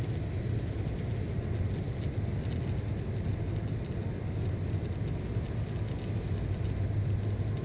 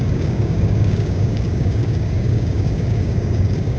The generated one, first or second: second